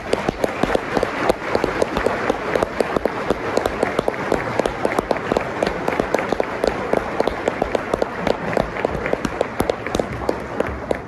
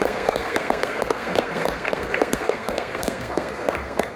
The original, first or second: first